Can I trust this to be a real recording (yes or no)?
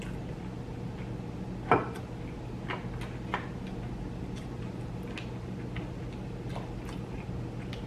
yes